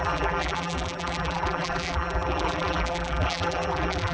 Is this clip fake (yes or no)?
yes